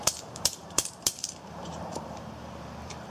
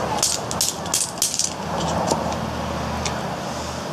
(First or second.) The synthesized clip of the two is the first